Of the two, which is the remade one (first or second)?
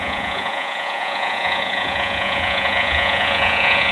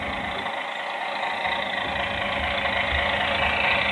first